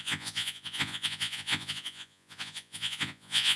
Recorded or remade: remade